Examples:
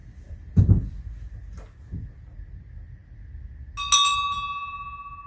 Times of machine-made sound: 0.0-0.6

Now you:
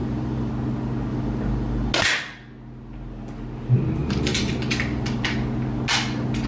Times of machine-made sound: 0.0-0.5; 1.1-1.9; 4.0-5.2

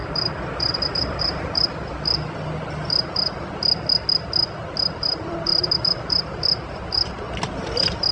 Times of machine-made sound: 0.0-1.9; 5.1-8.1

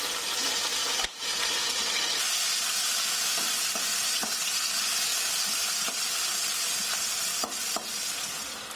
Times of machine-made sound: 0.8-2.0

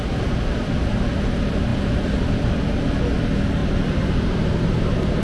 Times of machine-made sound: 1.7-2.5; 3.6-4.8